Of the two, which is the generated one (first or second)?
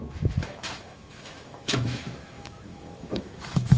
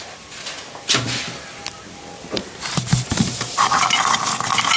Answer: first